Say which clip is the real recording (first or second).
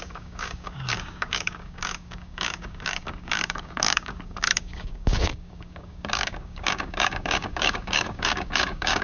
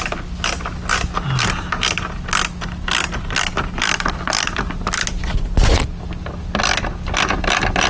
second